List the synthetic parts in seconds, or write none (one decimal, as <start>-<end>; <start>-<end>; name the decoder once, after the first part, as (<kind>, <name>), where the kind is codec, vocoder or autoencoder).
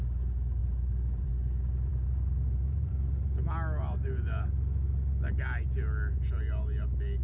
0.6-1.3 (vocoder, BigVGAN v2); 1.9-2.9